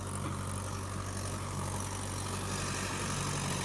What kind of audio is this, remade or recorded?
recorded